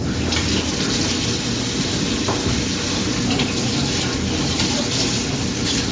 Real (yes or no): yes